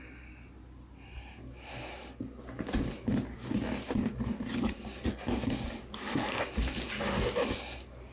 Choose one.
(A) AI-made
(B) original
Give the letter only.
B